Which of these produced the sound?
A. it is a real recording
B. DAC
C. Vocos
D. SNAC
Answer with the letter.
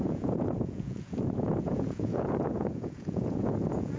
C